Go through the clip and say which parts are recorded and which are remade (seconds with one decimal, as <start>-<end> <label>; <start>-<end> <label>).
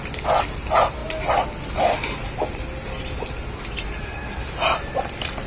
0.0-5.5 recorded